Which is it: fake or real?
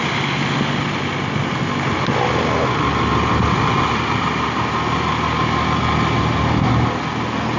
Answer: real